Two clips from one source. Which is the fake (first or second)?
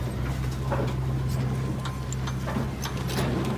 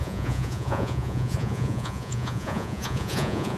second